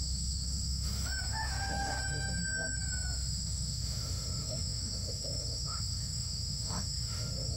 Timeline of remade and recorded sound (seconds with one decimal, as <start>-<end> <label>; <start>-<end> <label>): 0.0-7.6 remade

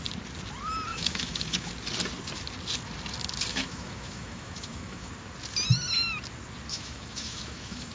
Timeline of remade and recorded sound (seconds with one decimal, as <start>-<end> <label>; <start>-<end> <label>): 0.0-0.9 recorded; 0.9-1.7 remade; 1.7-3.5 recorded; 3.5-5.1 remade; 5.1-6.7 recorded; 6.7-7.9 remade